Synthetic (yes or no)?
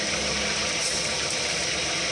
no